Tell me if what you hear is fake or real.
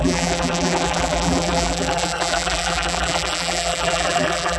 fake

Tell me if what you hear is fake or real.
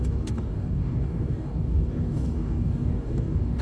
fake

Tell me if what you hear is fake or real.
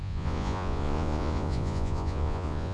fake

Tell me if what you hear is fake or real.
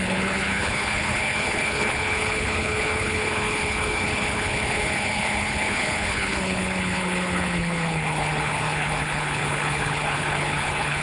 fake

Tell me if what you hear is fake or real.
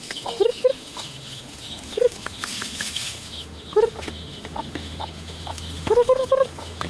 fake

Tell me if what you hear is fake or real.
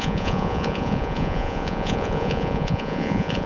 fake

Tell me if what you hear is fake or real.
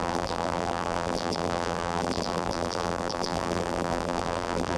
fake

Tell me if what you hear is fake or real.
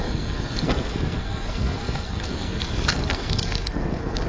fake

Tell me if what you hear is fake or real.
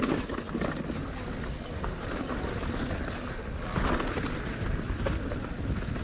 real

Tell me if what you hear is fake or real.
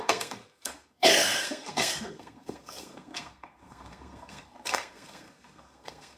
fake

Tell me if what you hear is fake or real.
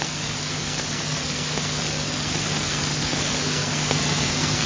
fake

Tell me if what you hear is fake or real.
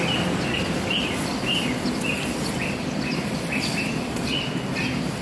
real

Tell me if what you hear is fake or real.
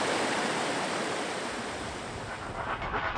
real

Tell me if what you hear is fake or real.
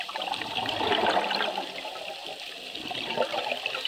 real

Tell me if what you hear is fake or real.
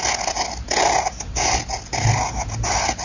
real